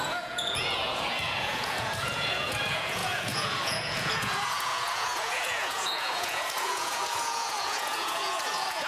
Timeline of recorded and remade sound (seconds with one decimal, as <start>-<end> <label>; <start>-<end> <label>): 0.0-8.9 remade